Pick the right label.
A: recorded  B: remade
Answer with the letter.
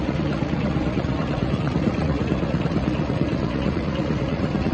B